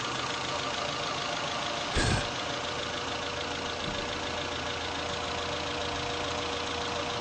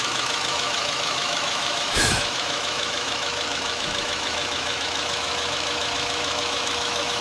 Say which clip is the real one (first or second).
first